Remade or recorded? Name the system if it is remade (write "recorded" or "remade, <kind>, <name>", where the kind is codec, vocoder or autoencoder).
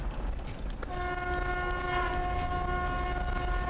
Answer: recorded